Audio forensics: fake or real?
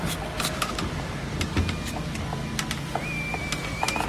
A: real